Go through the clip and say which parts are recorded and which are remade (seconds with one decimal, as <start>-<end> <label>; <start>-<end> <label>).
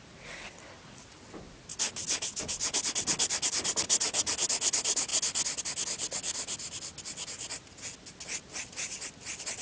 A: 0.0-9.6 recorded